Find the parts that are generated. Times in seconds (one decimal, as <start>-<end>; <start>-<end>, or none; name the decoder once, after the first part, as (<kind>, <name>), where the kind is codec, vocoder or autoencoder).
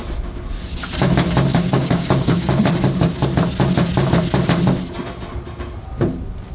1.5-2.7 (codec, DAC)